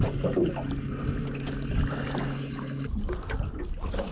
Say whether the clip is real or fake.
real